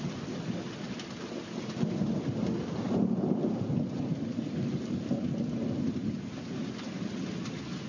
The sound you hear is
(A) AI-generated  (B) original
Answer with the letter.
B